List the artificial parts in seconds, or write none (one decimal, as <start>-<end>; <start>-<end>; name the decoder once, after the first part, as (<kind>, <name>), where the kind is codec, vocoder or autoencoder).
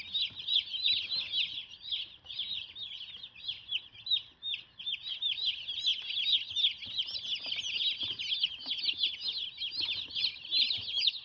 none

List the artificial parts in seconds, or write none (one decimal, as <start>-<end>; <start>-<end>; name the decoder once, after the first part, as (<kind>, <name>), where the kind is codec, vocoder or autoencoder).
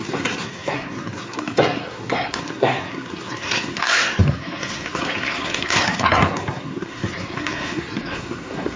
0.0-8.8 (codec, SNAC)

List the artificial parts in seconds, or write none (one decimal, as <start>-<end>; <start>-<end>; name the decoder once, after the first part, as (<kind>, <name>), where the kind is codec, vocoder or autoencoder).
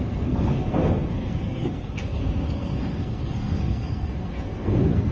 0.0-5.1 (codec, SNAC)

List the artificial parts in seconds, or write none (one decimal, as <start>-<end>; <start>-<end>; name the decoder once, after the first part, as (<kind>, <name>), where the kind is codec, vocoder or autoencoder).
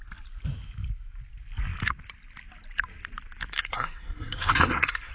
3.5-5.1 (codec, SNAC)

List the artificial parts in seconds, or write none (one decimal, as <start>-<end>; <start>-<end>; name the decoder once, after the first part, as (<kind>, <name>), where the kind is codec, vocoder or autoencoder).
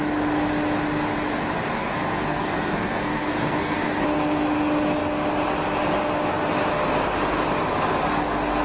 1.8-3.8 (codec, SNAC)